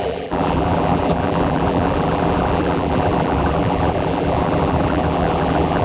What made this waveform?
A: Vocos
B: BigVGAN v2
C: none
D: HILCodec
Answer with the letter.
B